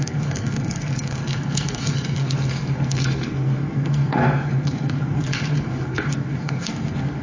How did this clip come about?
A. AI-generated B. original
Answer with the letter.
A